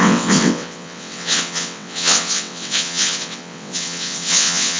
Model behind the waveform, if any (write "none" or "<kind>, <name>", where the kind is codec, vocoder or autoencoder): vocoder, WaveNeXt